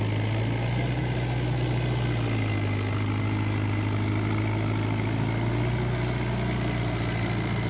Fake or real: real